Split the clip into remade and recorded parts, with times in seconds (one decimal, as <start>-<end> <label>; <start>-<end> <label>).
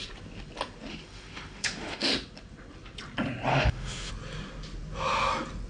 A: 0.0-0.9 recorded; 0.9-2.1 remade; 2.1-3.5 recorded; 3.5-4.1 remade; 4.1-5.7 recorded